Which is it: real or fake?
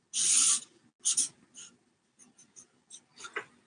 real